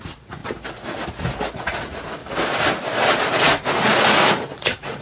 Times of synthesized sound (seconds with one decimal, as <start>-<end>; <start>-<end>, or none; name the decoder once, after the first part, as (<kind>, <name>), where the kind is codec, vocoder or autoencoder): 0.0-0.4 (vocoder, Vocos); 1.5-2.2; 3.3-5.0